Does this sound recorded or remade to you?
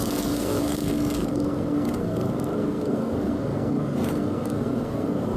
remade